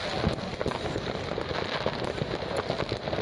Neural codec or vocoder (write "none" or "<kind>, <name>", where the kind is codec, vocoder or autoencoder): none